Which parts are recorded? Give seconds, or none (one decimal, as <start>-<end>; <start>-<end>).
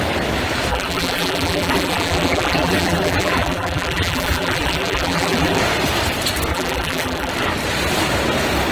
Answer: 0.0-0.7; 5.6-6.5; 7.3-8.7